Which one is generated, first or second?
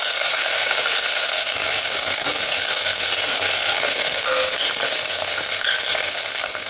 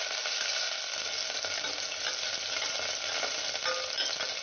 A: first